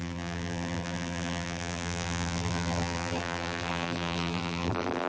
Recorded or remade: remade